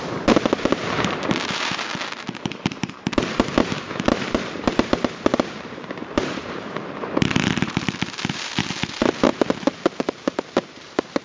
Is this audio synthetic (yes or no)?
yes